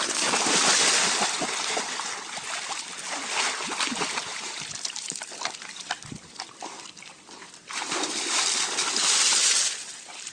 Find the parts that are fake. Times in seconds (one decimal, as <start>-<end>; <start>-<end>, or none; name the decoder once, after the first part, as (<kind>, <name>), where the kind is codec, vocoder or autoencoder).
4.3-5.3 (vocoder, BigVGAN v2)

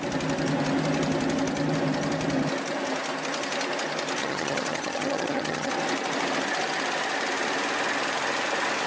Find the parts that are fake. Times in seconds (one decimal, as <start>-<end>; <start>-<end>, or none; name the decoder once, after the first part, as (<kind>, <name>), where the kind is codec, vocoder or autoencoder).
4.2-5.7 (vocoder, HiFi-GAN)

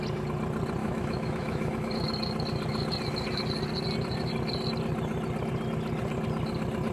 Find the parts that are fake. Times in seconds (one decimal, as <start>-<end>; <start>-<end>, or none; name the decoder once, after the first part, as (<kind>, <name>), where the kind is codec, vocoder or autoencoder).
0.8-1.9 (autoencoder, DAC-VAE)

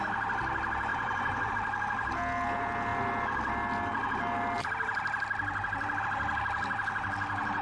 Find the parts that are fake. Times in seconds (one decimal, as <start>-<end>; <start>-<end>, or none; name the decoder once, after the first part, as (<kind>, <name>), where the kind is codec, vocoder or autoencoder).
0.9-1.5 (vocoder, Vocos)

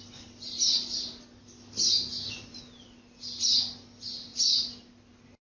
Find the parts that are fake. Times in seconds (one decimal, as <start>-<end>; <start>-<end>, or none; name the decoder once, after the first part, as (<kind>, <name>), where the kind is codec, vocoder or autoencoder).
none

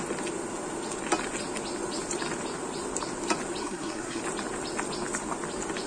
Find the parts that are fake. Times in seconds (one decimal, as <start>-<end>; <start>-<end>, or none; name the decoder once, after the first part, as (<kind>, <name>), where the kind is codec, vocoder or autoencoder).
3.6-4.2 (codec, SNAC)

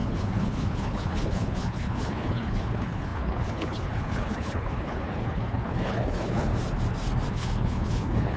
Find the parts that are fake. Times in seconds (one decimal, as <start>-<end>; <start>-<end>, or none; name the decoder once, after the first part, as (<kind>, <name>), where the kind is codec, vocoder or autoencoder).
0.0-6.5 (codec, HILCodec); 7.3-8.4